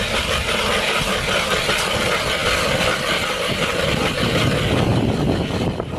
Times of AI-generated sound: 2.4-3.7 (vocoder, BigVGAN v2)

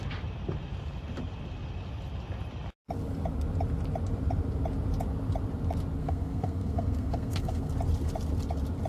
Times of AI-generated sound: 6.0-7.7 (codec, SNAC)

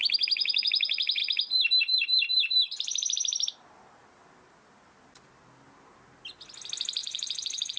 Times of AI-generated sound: 7.0-7.8 (vocoder, Vocos)

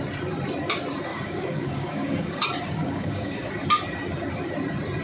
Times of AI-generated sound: 1.1-2.4 (codec, DAC); 2.8-3.5